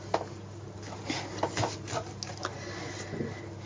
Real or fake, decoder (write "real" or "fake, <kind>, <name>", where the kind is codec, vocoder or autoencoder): real